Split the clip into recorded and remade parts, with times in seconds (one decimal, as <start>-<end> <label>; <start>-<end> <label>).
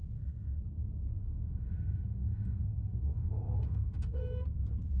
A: 0.0-1.2 recorded; 1.2-4.2 remade; 4.2-5.0 recorded